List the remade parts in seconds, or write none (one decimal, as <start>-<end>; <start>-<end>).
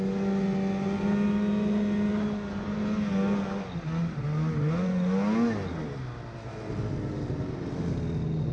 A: none